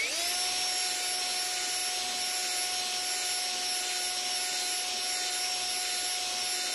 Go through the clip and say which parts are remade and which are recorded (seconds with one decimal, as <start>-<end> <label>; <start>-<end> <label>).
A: 0.0-6.7 recorded